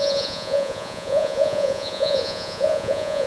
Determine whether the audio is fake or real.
fake